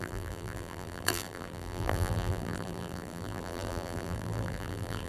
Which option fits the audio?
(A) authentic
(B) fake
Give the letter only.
B